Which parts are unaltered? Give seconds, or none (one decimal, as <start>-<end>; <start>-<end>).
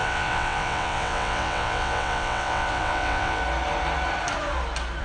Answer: 3.4-5.0